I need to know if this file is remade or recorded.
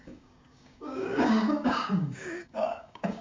remade